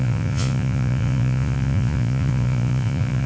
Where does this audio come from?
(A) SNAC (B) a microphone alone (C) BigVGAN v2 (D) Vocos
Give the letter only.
D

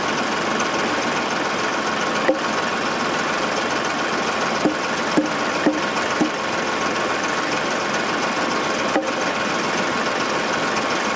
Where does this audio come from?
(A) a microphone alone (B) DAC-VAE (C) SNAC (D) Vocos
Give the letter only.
A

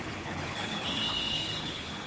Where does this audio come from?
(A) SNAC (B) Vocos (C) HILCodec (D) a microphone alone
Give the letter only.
C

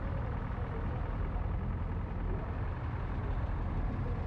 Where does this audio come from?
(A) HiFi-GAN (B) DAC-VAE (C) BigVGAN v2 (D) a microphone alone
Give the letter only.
C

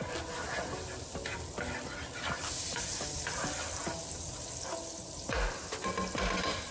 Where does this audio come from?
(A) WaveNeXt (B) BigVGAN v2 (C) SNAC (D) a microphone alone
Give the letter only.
D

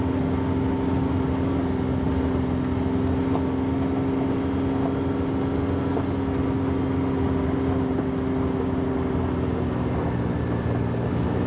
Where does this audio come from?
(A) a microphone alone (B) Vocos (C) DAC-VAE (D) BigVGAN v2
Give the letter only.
A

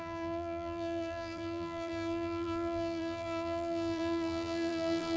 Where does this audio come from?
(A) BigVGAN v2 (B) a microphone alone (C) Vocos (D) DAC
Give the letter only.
A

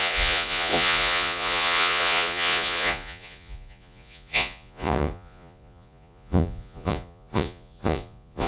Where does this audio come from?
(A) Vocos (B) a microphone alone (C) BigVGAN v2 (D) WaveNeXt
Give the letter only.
A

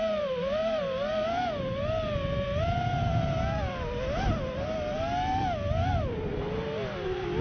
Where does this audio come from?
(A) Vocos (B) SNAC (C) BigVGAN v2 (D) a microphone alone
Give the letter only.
D